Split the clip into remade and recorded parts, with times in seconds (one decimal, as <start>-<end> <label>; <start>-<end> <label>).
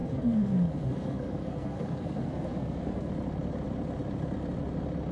0.0-3.1 remade; 3.1-5.1 recorded